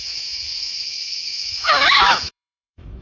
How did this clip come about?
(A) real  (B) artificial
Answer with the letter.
B